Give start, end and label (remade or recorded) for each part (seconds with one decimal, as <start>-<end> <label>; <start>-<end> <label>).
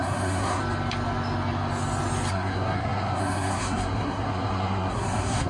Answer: 0.0-0.6 remade; 0.6-2.3 recorded; 2.3-5.5 remade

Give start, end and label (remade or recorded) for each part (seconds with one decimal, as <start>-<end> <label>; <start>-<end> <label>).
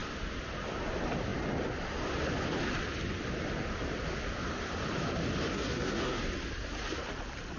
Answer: 0.0-5.5 recorded; 5.5-6.2 remade; 6.2-7.6 recorded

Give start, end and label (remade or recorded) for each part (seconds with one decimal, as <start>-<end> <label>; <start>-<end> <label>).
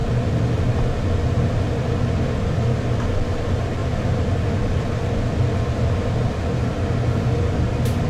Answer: 0.0-8.1 recorded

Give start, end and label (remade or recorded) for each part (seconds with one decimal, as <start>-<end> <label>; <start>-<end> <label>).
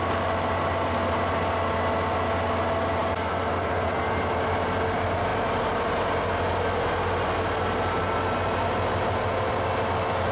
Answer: 0.0-10.3 recorded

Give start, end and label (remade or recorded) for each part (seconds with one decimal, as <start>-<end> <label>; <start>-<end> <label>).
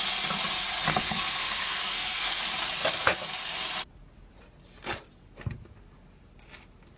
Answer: 0.0-0.9 recorded; 0.9-2.4 remade; 2.4-7.0 recorded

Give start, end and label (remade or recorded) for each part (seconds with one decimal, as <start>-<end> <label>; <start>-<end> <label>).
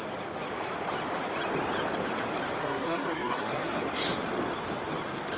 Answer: 0.0-2.6 recorded; 2.6-3.8 remade; 3.8-5.4 recorded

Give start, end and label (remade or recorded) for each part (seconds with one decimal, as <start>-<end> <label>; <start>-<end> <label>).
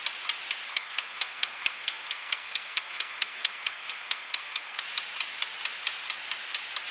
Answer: 0.0-0.7 recorded; 0.7-4.8 remade; 4.8-6.9 recorded